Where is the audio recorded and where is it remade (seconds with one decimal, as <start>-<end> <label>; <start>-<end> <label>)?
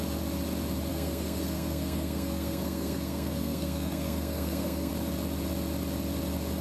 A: 0.0-0.9 recorded; 0.9-4.9 remade; 4.9-6.6 recorded